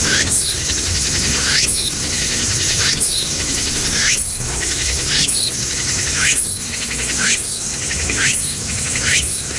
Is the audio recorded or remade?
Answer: remade